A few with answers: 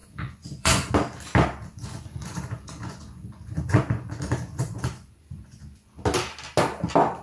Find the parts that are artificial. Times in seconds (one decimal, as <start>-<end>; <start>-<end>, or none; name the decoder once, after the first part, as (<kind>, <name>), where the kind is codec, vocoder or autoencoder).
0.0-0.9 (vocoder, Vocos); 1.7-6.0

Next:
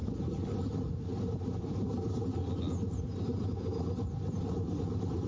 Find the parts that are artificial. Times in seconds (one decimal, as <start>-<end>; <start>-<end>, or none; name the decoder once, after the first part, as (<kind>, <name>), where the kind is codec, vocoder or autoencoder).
none

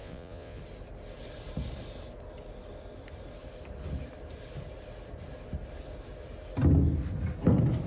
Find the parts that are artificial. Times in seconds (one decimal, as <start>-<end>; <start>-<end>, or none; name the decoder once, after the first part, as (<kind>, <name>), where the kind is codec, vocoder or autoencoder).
0.0-0.6 (vocoder, Vocos)

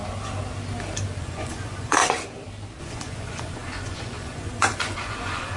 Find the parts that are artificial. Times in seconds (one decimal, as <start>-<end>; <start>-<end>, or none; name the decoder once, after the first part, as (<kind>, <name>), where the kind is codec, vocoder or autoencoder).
1.2-2.0 (vocoder, Vocos); 2.8-5.6